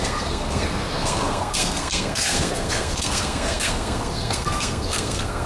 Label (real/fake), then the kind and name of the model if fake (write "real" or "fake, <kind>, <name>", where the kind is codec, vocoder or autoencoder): fake, codec, SNAC